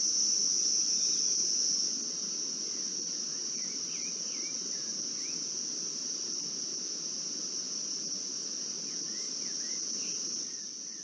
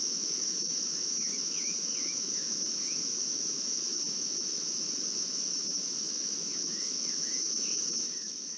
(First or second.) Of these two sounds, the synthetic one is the second